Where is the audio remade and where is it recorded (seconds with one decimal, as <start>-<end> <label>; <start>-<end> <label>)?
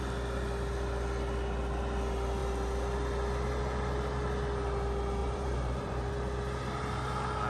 0.0-5.2 recorded; 5.2-6.1 remade; 6.1-7.5 recorded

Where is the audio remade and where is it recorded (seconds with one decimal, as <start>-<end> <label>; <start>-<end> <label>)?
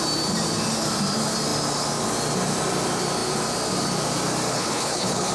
0.0-4.5 recorded; 4.5-5.3 remade